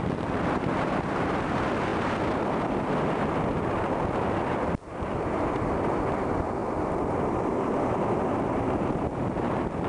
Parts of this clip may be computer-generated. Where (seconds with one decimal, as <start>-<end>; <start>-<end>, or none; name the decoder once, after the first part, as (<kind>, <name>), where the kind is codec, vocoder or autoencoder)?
none